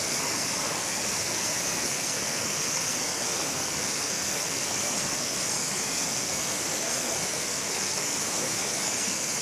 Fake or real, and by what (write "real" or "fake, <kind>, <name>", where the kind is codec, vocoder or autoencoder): fake, codec, SNAC